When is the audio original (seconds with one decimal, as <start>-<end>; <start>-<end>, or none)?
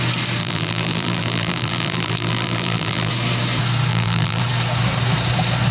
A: 0.0-0.4; 3.1-3.9; 4.4-5.7